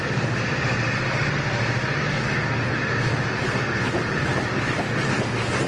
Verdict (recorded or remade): recorded